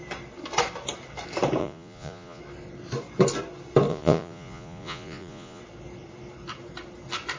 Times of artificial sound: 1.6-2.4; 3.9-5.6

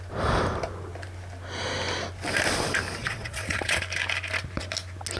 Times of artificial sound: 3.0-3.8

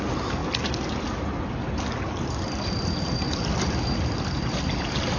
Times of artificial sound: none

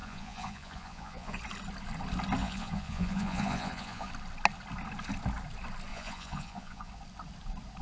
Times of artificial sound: 0.0-1.4; 2.4-4.1; 5.9-6.9

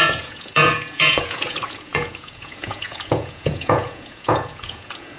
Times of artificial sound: 0.0-5.2

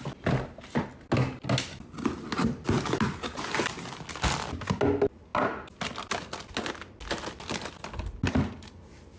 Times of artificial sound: none

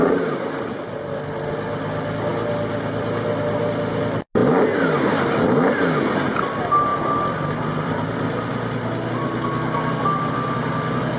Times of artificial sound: none

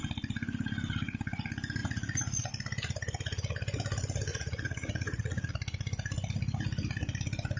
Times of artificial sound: 1.8-2.5; 4.3-5.5